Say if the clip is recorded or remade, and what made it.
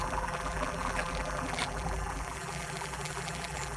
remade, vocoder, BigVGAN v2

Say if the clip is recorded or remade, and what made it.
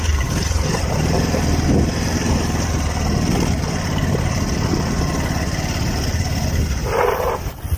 recorded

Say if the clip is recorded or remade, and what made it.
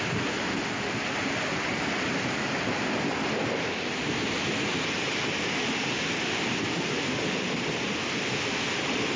recorded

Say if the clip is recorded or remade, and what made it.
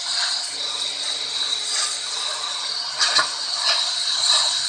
recorded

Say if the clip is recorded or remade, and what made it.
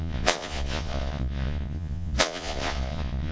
remade, vocoder, Vocos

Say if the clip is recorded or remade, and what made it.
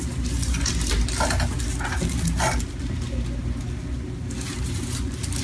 recorded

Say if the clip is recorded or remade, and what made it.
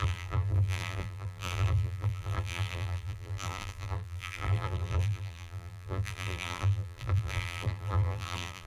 remade, vocoder, BigVGAN v2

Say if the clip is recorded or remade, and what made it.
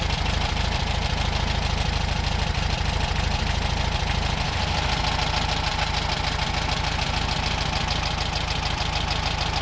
recorded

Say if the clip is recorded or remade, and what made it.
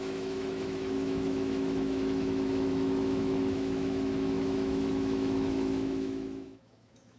remade, autoencoder, DAC-VAE